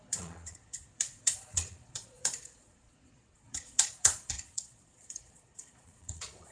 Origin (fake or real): fake